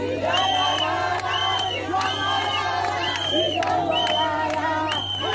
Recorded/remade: recorded